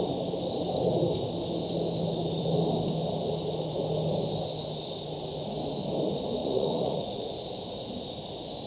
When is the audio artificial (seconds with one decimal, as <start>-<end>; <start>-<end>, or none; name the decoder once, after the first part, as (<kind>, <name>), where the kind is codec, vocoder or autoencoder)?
6.4-7.3 (vocoder, Vocos)

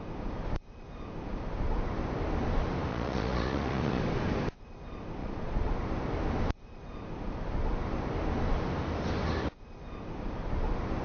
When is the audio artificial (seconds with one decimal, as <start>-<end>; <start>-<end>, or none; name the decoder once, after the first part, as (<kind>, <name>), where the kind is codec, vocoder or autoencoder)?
2.9-4.0 (vocoder, Vocos); 5.2-5.7

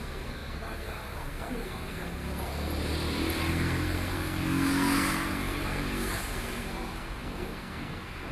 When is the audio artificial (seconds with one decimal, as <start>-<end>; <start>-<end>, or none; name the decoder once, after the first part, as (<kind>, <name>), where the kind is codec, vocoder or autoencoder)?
0.0-2.7 (codec, SNAC); 3.5-8.3

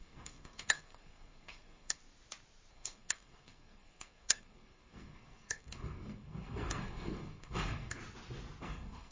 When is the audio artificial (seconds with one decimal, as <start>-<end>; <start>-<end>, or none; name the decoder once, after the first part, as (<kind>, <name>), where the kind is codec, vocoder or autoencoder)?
0.0-2.0 (codec, SNAC); 2.7-8.0; 8.6-9.1

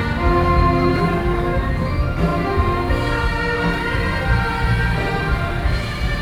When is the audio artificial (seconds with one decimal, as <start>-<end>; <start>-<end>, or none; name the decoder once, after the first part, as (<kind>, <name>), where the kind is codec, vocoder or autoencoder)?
0.9-1.8 (codec, DAC)

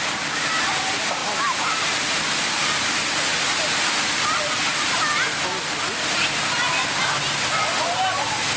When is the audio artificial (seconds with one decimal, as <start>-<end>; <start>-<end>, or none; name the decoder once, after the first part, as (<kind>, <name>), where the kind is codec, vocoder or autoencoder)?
none

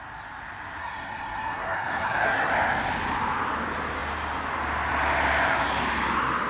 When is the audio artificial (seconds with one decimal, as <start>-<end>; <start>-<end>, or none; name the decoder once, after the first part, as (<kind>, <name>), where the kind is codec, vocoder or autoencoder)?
0.8-2.5 (codec, SNAC)

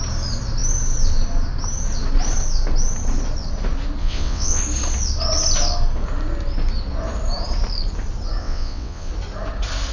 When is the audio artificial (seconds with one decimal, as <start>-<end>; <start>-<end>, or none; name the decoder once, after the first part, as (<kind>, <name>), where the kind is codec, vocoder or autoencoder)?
4.0-4.6 (vocoder, WaveNeXt); 8.4-9.1